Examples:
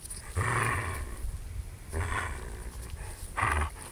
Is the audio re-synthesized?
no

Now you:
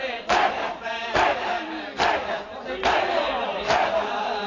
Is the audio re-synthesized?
no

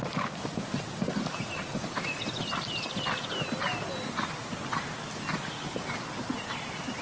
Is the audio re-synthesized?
no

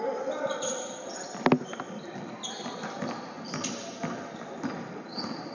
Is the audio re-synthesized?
no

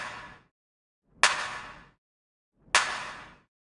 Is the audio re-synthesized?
no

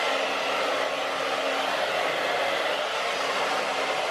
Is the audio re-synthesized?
no